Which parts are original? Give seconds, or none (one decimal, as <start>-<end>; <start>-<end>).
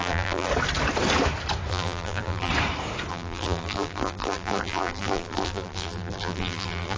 0.5-1.7; 2.5-3.1